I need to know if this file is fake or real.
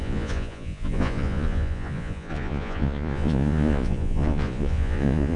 fake